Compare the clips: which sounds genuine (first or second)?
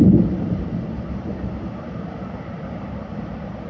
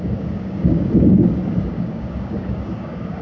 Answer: first